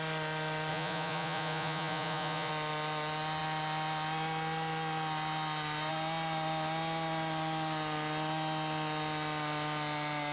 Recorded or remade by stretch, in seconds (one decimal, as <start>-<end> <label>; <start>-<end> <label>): 0.0-0.7 recorded; 0.7-2.5 remade; 2.5-10.3 recorded

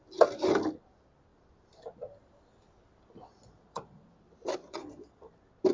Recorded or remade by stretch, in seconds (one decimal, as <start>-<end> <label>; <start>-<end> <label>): 0.0-3.3 recorded; 3.3-4.0 remade; 4.0-4.6 recorded; 4.6-5.3 remade; 5.3-5.7 recorded

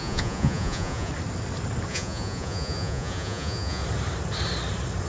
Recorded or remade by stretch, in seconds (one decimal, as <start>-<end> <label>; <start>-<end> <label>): 0.0-1.1 remade; 1.1-1.9 recorded; 1.9-3.8 remade; 3.8-5.1 recorded

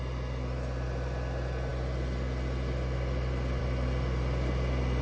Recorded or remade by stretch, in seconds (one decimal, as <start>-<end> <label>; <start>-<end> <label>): 0.0-5.0 recorded

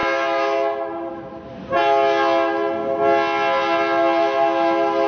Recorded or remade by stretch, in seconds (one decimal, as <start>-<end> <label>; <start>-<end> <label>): 0.0-5.1 recorded

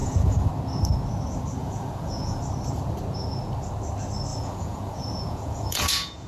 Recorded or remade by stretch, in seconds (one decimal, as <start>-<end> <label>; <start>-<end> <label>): 0.0-0.5 remade; 0.5-1.6 recorded; 1.6-2.4 remade; 2.4-4.3 recorded; 4.3-6.3 remade

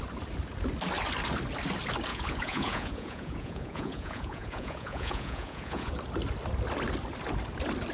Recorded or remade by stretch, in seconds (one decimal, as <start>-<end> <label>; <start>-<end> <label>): 0.0-2.1 recorded; 2.1-5.9 remade; 5.9-7.9 recorded